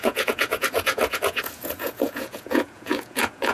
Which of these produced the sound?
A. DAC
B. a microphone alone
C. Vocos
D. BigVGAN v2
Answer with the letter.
C